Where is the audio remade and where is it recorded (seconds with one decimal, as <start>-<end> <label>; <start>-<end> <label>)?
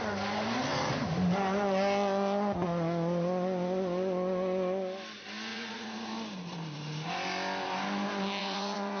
0.0-5.5 recorded; 5.5-6.1 remade; 6.1-8.4 recorded; 8.4-9.0 remade